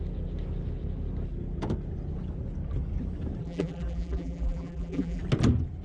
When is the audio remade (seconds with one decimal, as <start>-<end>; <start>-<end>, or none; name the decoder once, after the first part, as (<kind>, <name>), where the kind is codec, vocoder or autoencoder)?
3.4-5.2 (vocoder, BigVGAN v2)